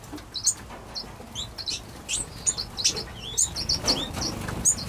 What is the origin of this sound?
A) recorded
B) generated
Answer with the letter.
A